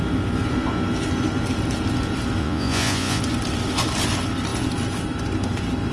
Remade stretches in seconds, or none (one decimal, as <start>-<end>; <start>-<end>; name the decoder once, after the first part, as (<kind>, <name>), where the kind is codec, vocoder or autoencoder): 2.4-3.2 (vocoder, Vocos)